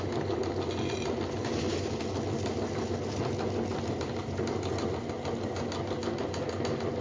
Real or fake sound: real